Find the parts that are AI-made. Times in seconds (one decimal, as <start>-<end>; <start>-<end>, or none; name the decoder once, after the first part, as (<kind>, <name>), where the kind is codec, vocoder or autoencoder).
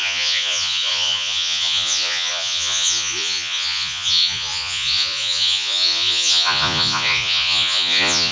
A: 0.0-8.3 (vocoder, Vocos)